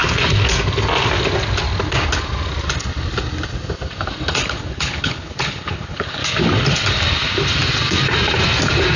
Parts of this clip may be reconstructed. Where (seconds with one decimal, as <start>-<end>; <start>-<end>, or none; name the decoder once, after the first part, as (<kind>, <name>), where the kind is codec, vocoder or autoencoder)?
4.4-6.2 (codec, HILCodec)